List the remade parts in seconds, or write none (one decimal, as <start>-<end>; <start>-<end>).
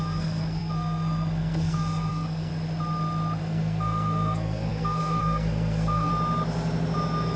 0.0-2.5; 3.4-6.1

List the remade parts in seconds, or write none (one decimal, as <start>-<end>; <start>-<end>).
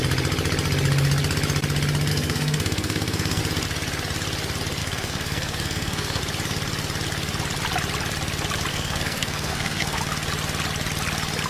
2.1-3.4; 4.8-6.2; 8.7-10.0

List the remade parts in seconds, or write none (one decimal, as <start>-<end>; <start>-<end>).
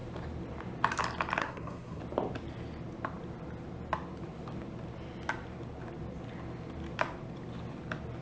1.4-2.0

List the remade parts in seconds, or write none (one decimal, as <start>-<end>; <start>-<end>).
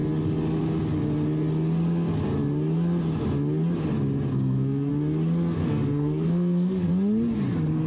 4.3-4.9; 5.6-6.9